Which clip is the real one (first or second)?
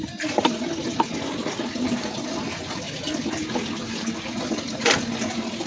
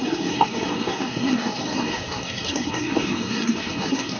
first